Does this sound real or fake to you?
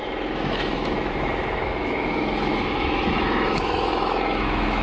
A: fake